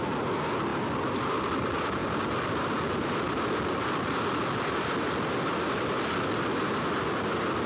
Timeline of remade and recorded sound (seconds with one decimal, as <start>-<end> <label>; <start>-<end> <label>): 0.0-7.7 recorded